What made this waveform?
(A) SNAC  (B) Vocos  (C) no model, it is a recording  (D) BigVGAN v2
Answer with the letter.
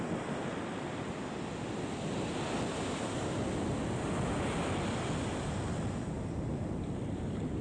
C